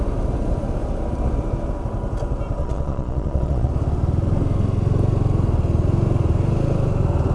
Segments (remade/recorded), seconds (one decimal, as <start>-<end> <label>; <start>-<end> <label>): 0.0-2.6 recorded; 2.6-3.7 remade; 3.7-7.3 recorded